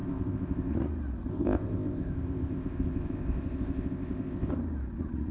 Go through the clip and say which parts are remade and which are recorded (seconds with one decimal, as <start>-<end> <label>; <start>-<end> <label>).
0.0-0.7 remade; 0.7-1.3 recorded; 1.3-4.5 remade; 4.5-5.3 recorded